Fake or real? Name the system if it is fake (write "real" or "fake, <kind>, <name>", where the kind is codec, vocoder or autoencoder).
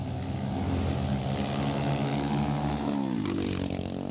real